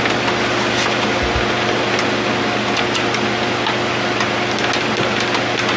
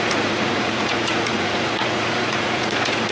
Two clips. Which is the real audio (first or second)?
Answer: first